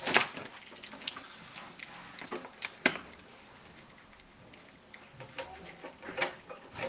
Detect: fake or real real